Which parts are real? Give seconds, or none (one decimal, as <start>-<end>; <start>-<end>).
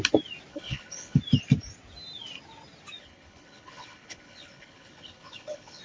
0.0-0.5; 1.2-3.0